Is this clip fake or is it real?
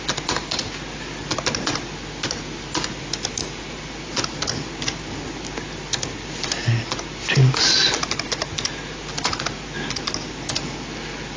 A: real